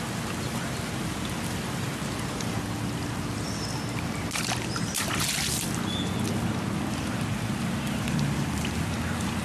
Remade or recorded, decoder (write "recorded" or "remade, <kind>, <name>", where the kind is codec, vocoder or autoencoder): recorded